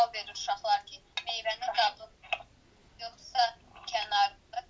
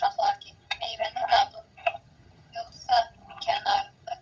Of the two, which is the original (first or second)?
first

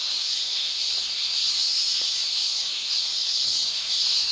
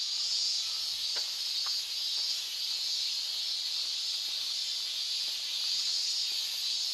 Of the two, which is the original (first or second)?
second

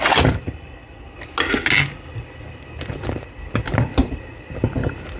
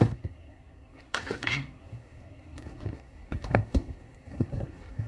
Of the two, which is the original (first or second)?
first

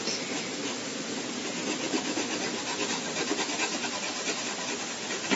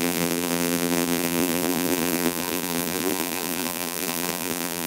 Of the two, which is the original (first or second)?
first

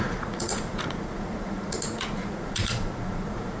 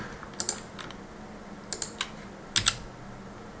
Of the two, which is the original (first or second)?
second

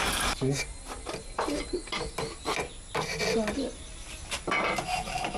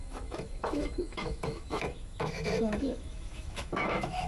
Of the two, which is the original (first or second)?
first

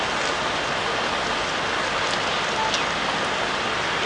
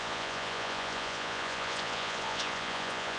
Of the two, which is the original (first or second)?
first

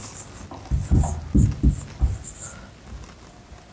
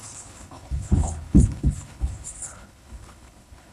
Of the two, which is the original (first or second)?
first